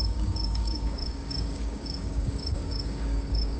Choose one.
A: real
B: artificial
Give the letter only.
B